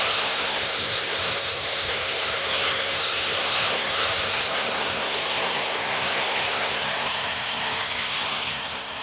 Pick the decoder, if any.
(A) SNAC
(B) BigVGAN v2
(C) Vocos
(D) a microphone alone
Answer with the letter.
A